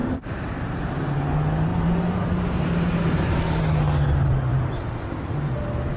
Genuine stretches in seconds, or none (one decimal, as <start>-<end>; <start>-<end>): 1.1-1.7; 3.6-4.5; 5.5-6.0